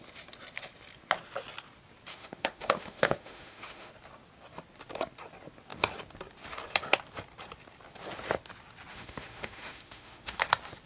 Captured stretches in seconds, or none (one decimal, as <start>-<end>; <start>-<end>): 0.0-2.1; 3.9-8.9; 10.4-10.9